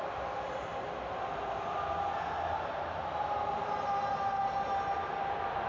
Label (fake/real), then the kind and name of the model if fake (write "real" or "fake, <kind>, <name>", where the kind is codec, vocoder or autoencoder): real